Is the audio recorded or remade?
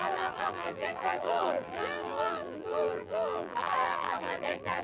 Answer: remade